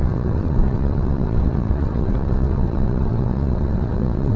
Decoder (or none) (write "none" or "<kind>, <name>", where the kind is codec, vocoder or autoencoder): vocoder, WaveNeXt